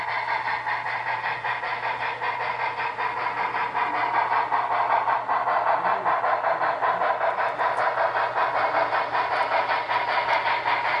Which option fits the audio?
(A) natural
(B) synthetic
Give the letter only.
A